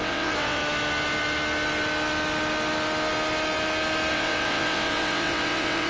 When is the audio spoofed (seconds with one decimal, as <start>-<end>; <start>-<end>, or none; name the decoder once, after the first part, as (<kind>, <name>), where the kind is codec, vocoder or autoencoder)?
0.0-0.6 (vocoder, WaveNeXt); 4.1-5.9